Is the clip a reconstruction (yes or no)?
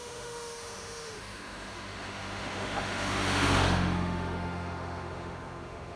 yes